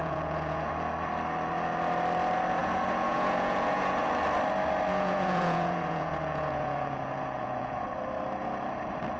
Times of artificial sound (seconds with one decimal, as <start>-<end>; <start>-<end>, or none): 0.0-0.7; 2.6-4.1; 4.9-7.8